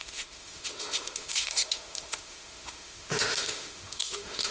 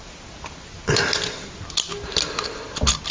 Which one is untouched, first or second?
second